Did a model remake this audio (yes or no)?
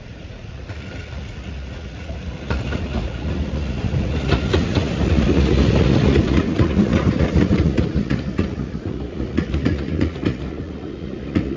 yes